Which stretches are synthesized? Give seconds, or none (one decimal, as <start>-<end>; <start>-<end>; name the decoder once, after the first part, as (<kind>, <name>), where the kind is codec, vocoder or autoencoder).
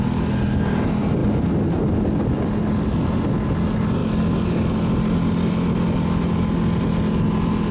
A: none